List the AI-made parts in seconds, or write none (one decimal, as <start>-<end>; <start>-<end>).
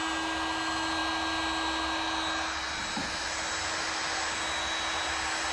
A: none